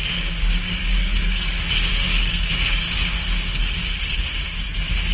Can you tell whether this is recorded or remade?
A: remade